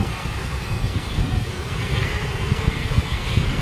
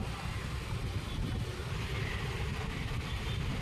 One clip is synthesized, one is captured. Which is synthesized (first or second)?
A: first